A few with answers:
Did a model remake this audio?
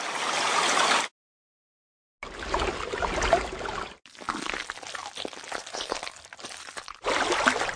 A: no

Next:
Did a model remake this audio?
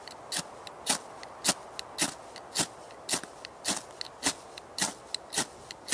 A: no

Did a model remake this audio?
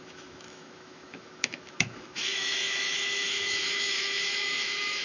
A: yes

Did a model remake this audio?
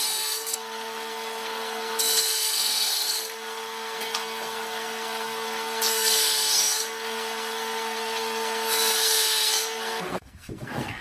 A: yes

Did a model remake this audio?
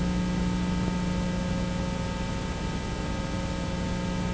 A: no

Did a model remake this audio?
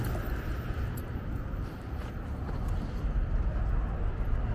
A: no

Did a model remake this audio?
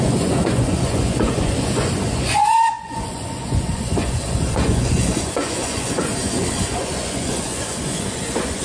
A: yes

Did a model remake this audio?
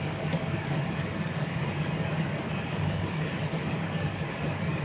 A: yes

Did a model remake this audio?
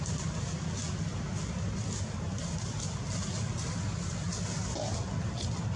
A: no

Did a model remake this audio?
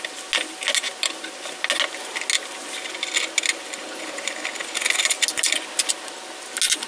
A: no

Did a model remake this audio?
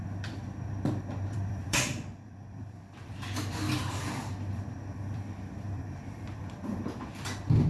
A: yes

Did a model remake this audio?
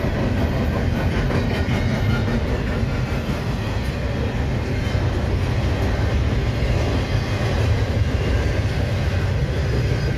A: no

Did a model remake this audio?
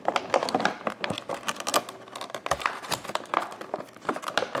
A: no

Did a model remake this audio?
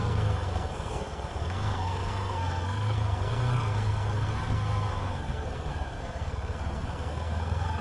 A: yes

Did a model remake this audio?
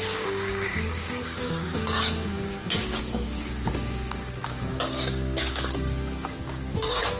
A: yes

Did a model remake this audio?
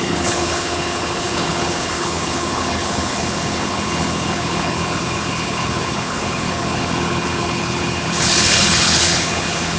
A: yes